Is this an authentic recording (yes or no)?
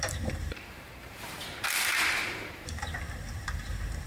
no